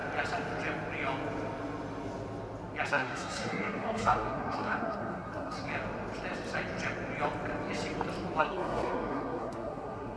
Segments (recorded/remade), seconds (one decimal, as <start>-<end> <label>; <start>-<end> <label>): 0.0-2.9 recorded; 2.9-5.7 remade; 5.7-8.4 recorded; 8.4-10.2 remade